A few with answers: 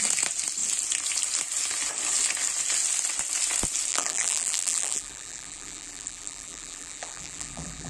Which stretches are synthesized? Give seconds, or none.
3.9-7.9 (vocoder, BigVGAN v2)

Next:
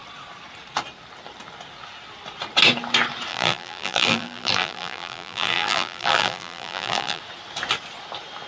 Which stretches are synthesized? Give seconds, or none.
3.3-7.2 (vocoder, BigVGAN v2)

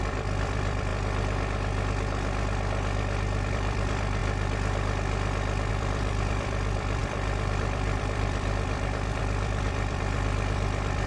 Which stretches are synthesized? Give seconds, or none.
0.0-0.9 (vocoder, BigVGAN v2); 3.5-4.2; 5.7-11.1

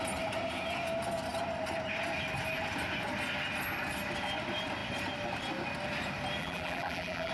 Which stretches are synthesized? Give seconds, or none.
6.4-7.3 (vocoder, BigVGAN v2)